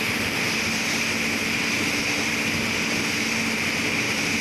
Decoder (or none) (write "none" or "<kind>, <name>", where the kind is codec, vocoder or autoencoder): none